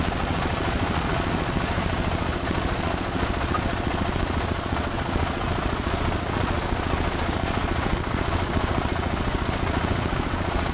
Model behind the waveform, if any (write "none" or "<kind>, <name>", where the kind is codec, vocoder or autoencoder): vocoder, Vocos